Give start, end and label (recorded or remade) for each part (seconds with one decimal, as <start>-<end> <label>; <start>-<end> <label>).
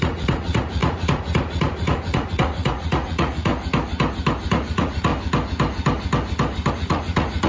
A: 0.0-3.5 remade; 3.5-4.5 recorded; 4.5-5.1 remade; 5.1-6.7 recorded; 6.7-7.5 remade